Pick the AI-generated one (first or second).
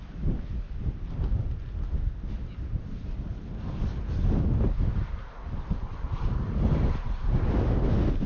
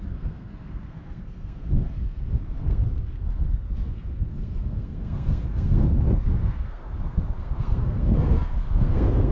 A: second